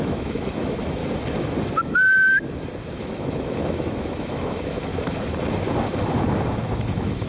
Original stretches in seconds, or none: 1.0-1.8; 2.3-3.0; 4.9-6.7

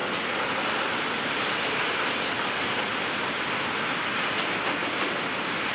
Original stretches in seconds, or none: 0.0-5.7

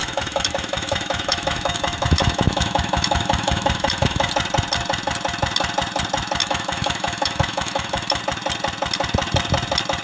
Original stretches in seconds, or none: 4.3-6.4; 8.2-10.0

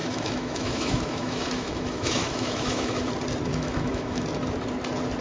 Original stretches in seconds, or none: 3.1-3.5; 4.2-5.2

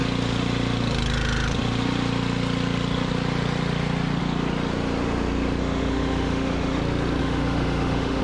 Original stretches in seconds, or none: 0.0-5.6; 6.8-7.2